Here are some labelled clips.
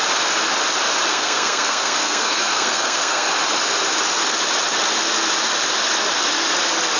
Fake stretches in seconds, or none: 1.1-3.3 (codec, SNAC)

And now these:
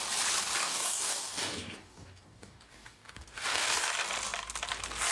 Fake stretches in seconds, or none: 0.6-3.7 (codec, DAC)

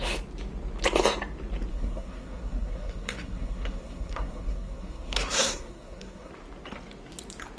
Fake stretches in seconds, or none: 1.7-6.3 (codec, SNAC)